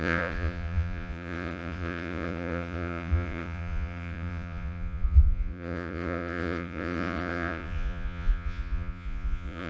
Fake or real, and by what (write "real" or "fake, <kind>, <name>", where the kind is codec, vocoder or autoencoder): fake, vocoder, Vocos